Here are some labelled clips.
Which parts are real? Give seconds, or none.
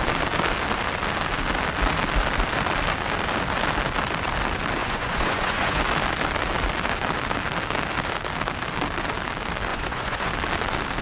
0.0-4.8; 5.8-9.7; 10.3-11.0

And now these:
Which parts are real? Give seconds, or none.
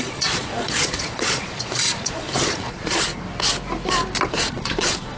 3.1-4.3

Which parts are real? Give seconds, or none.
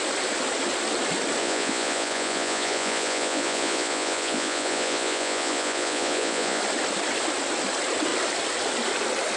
0.0-1.4; 6.6-9.4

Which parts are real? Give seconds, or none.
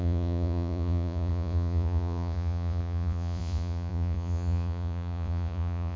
none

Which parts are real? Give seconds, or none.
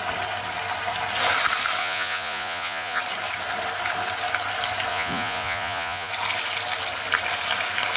0.0-1.8; 3.0-4.9; 6.1-8.0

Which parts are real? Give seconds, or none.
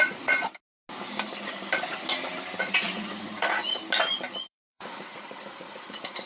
0.4-2.6; 3.6-4.5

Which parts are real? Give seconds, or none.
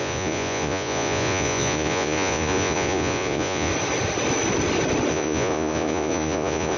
3.7-5.1